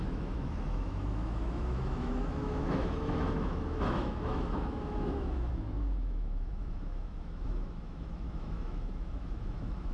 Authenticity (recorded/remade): remade